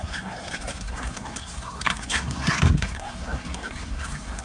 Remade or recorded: remade